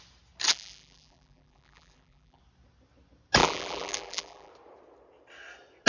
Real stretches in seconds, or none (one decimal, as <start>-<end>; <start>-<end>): 0.0-0.5; 2.4-3.4; 4.5-5.9